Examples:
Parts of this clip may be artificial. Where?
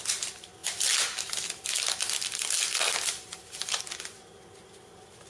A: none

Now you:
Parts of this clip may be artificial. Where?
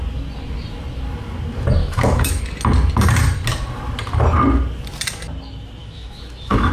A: 1.8-2.4 (autoencoder, DAC-VAE); 5.8-6.7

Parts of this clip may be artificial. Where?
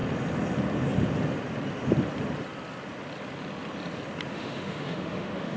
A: 4.3-5.6 (autoencoder, DAC-VAE)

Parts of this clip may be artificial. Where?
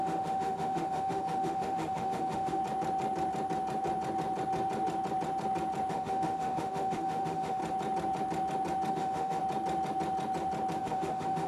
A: 0.0-2.6 (autoencoder, DAC-VAE); 5.9-7.6; 8.9-9.4; 10.8-11.5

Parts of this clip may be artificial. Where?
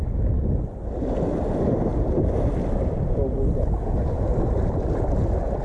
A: none